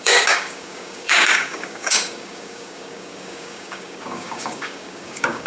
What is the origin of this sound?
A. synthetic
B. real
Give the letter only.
A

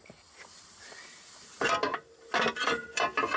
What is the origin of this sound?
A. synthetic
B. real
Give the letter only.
B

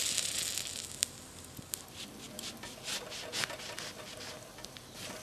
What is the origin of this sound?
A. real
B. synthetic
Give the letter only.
A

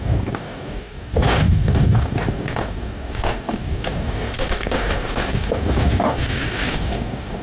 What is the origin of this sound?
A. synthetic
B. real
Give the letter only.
A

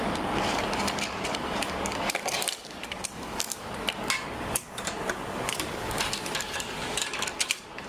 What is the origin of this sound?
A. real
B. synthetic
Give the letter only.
B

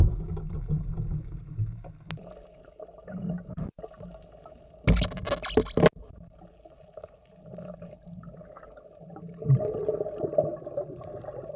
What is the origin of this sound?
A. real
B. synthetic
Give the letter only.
A